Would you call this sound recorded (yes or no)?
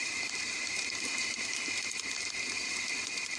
yes